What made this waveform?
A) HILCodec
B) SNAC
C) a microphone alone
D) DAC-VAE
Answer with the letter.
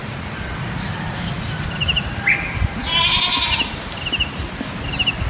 C